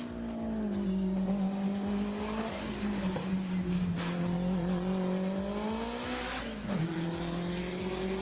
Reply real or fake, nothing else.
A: real